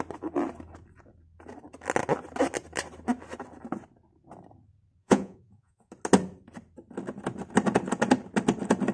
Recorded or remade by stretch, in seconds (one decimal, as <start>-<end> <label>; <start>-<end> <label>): 0.0-5.0 recorded; 5.0-5.9 remade; 5.9-8.9 recorded